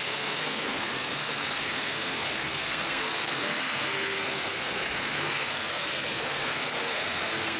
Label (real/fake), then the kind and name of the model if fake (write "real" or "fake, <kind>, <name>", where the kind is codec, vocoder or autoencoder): fake, codec, SNAC